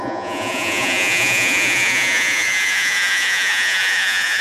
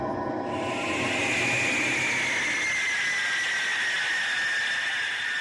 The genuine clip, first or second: second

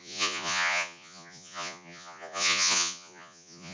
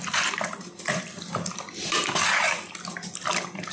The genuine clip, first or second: second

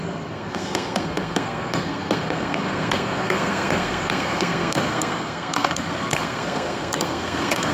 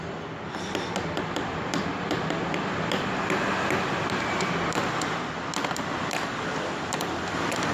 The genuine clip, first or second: second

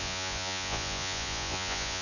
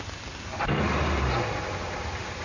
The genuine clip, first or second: second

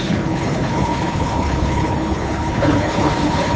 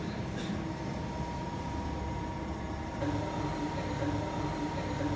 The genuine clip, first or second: second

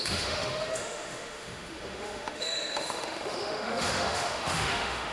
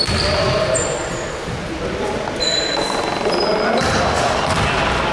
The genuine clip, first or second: second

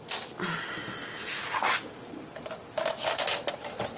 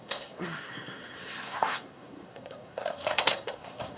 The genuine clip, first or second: first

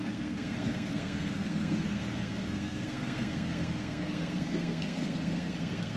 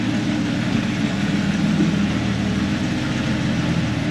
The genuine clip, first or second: second